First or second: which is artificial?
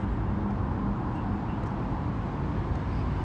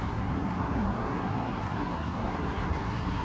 second